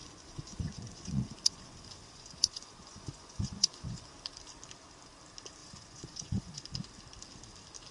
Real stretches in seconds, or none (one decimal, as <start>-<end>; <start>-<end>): 4.1-5.6; 6.6-7.9